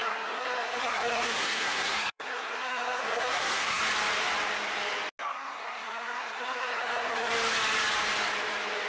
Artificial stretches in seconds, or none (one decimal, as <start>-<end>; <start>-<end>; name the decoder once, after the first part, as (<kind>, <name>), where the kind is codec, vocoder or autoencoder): 0.0-3.8 (codec, SNAC); 5.3-7.3